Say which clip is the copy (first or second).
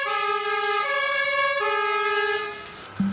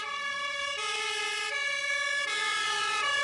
second